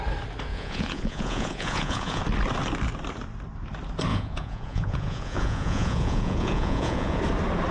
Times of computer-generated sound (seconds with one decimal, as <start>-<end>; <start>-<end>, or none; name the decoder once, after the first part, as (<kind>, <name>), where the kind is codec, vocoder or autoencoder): 0.5-2.2 (vocoder, Vocos); 4.1-7.2

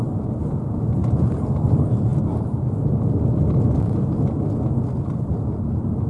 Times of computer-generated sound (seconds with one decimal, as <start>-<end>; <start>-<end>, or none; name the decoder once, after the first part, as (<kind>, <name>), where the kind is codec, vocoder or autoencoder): 0.0-1.0 (vocoder, BigVGAN v2); 1.7-2.1; 5.0-6.1

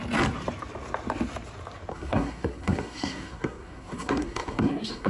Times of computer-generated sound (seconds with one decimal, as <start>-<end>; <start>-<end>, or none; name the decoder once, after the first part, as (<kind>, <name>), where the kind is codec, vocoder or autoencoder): 1.9-5.1 (codec, SNAC)

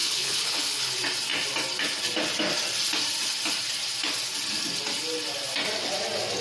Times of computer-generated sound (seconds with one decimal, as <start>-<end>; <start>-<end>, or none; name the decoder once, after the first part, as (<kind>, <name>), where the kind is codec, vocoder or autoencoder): 0.0-0.9 (codec, HILCodec)